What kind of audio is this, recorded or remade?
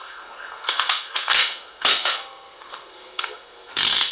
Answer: remade